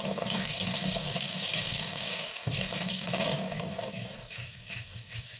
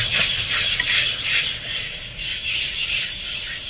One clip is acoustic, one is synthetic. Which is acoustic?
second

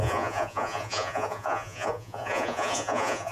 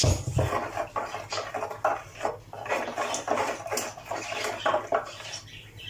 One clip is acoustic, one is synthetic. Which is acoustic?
second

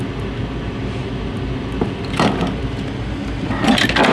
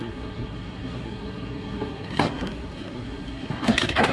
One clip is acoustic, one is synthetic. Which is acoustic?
first